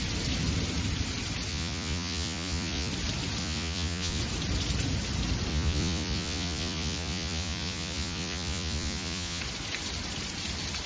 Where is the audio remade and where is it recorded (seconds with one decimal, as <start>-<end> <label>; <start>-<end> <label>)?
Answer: 0.0-1.5 recorded; 1.5-2.9 remade; 2.9-3.4 recorded; 3.4-4.2 remade; 4.2-5.5 recorded; 5.5-9.4 remade; 9.4-10.9 recorded